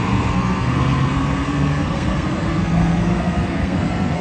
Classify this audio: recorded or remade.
remade